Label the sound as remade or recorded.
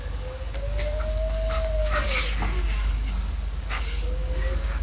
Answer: remade